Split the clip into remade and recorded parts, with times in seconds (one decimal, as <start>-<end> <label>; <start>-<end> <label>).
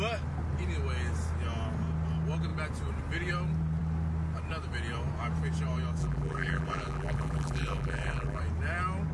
0.0-6.0 recorded; 6.0-8.4 remade; 8.4-9.1 recorded